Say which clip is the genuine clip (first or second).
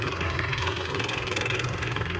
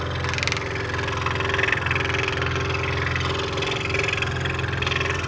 second